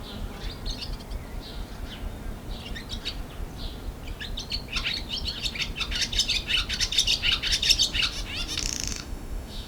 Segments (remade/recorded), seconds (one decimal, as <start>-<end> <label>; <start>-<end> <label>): 0.0-8.9 recorded; 8.9-9.7 remade